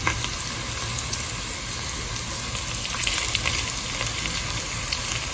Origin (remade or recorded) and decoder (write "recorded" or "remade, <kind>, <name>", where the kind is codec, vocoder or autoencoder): recorded